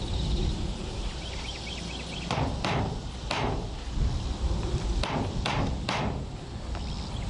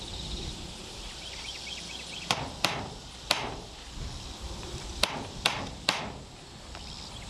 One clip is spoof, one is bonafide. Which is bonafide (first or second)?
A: first